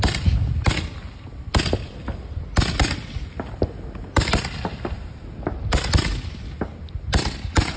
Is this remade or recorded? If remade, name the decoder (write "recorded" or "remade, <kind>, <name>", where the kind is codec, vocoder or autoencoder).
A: recorded